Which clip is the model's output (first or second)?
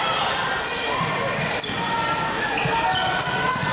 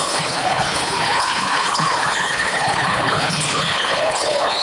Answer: second